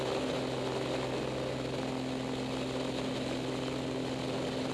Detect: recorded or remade recorded